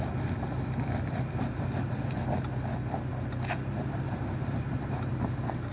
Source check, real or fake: real